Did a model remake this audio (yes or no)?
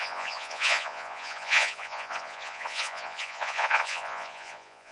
yes